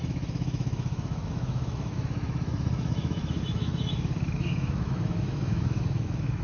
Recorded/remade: remade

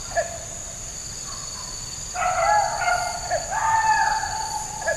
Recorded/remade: recorded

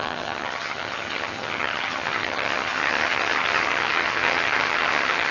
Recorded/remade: remade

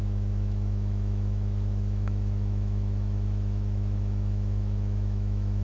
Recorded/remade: remade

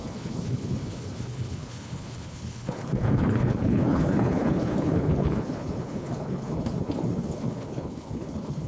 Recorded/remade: remade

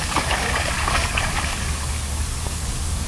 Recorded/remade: remade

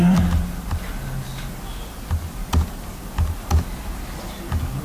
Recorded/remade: recorded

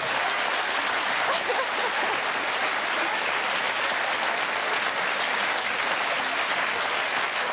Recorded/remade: recorded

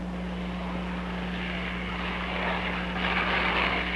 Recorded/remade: recorded